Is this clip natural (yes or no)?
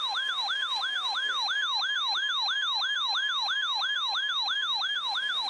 yes